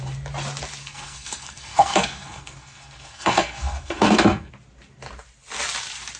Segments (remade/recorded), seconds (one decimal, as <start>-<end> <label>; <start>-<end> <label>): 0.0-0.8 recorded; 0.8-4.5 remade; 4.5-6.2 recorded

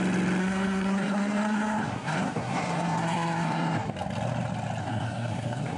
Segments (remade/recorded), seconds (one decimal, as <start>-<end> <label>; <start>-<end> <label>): 0.0-0.4 recorded; 0.4-3.9 remade; 3.9-4.8 recorded; 4.8-5.8 remade

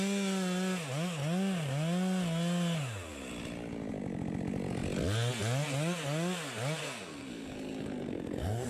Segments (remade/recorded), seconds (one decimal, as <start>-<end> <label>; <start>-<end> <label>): 0.0-6.8 recorded; 6.8-8.7 remade

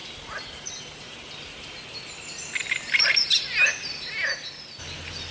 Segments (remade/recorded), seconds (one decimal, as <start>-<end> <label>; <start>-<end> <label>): 0.0-5.3 recorded

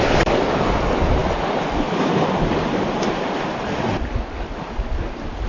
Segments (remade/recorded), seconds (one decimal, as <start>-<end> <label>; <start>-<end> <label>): 0.0-5.5 recorded

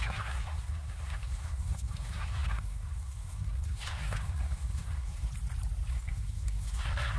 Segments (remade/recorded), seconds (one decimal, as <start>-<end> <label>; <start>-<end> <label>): 0.0-5.3 remade; 5.3-5.9 recorded; 5.9-7.2 remade

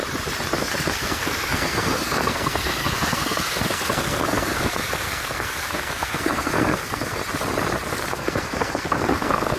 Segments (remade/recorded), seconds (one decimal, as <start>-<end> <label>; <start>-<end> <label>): 0.0-0.6 recorded; 0.6-7.2 remade; 7.2-7.9 recorded; 7.9-9.6 remade